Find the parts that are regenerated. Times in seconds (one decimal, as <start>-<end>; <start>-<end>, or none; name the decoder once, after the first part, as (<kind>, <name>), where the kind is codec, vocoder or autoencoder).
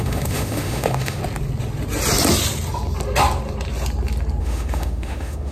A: 0.0-1.2 (autoencoder, DAC-VAE); 4.4-5.5